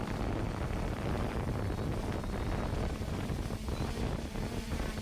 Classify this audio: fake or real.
real